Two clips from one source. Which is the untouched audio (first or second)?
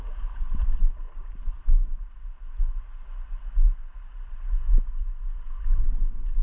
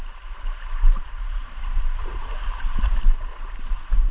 first